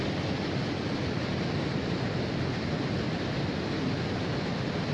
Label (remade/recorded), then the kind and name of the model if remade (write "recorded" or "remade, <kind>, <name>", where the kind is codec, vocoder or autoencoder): recorded